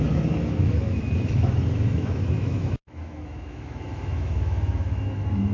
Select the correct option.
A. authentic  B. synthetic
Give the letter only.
B